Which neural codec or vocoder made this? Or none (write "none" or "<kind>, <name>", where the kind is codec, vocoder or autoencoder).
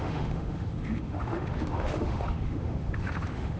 autoencoder, DAC-VAE